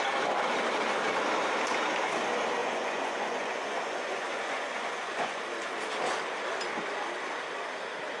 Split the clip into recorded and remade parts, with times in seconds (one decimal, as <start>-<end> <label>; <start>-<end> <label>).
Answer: 0.0-2.6 recorded; 2.6-5.4 remade; 5.4-8.2 recorded